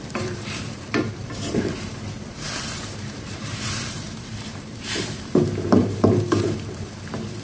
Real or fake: fake